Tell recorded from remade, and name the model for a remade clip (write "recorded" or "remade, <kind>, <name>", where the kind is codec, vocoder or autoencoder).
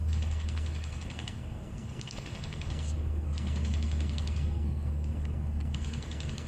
remade, codec, SNAC